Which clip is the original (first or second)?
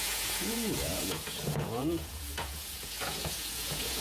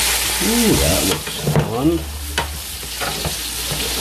second